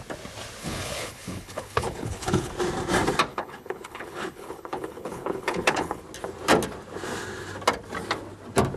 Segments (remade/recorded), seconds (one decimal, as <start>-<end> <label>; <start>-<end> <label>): 0.0-0.6 recorded; 0.6-2.5 remade; 2.5-3.3 recorded; 3.3-6.0 remade; 6.0-8.8 recorded